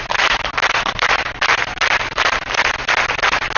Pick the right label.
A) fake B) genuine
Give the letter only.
B